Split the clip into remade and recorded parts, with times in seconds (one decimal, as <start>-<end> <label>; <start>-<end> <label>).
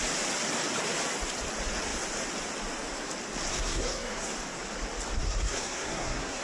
0.0-3.5 recorded; 3.5-4.3 remade; 4.3-5.2 recorded; 5.2-6.4 remade